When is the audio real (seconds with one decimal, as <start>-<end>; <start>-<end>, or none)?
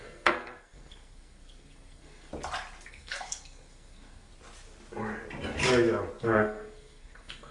2.3-2.9; 4.3-6.2